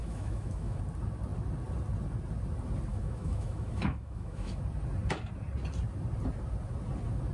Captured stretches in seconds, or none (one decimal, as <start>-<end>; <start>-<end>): 0.8-2.9; 4.6-7.3

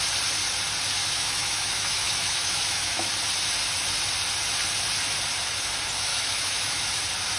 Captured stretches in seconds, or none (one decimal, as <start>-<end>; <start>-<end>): 0.0-1.0; 3.1-6.1; 7.0-7.4

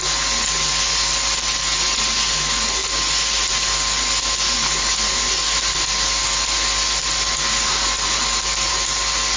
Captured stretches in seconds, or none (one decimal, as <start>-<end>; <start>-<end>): 0.0-9.4